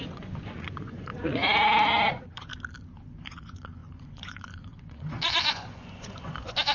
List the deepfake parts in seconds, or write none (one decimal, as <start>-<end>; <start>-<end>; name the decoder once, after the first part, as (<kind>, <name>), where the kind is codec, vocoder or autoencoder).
0.0-1.4 (vocoder, Vocos); 2.1-2.5; 3.1-6.7

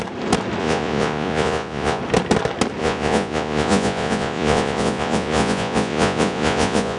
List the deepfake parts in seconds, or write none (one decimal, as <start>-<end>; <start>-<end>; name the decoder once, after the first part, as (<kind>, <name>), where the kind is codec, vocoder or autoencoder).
0.6-2.0 (vocoder, Vocos); 2.8-7.0

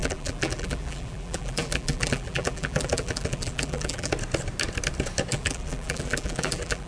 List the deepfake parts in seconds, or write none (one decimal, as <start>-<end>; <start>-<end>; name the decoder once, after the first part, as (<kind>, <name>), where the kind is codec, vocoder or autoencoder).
0.0-4.1 (vocoder, BigVGAN v2); 5.3-6.9

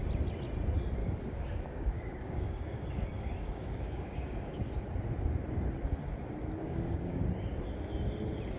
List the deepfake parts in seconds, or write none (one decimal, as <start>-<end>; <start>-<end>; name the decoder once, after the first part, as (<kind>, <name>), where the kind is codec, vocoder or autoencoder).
1.0-4.8 (codec, DAC); 6.6-7.2

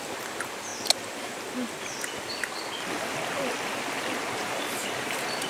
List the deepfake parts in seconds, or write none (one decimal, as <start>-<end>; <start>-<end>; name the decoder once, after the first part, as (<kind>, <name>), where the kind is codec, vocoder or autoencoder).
0.0-0.7 (vocoder, BigVGAN v2); 4.0-5.5

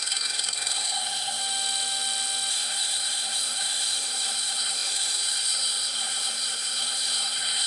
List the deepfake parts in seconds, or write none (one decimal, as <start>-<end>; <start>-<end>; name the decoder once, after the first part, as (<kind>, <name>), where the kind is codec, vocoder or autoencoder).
0.0-1.4 (codec, SNAC); 2.5-7.7